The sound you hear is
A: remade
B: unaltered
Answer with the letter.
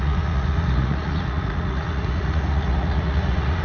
A